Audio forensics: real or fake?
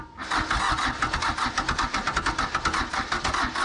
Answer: real